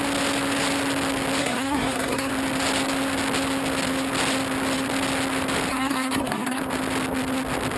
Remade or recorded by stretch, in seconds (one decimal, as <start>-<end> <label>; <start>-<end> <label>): 0.0-1.4 recorded; 1.4-2.3 remade; 2.3-5.7 recorded; 5.7-6.6 remade; 6.6-7.8 recorded